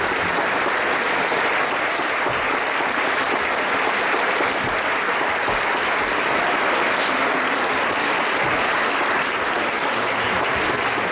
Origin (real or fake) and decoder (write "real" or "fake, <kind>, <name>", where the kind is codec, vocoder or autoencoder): real